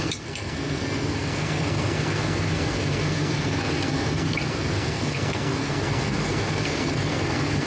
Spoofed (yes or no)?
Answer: yes